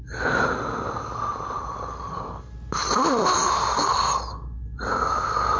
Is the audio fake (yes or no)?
no